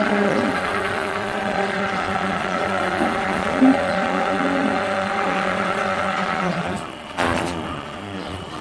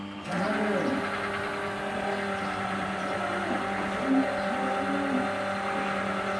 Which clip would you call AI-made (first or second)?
first